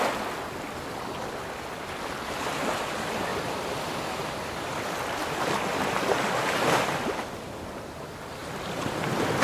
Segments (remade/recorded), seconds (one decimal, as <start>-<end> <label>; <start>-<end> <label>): 0.0-3.3 recorded; 3.3-6.7 remade; 6.7-8.4 recorded; 8.4-9.0 remade; 9.0-9.4 recorded